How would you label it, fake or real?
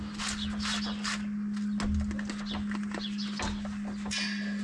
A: real